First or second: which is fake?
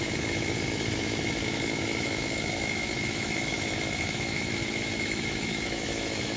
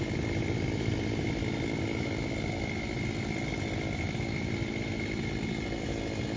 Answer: first